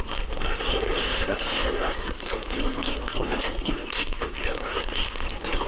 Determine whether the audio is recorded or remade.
remade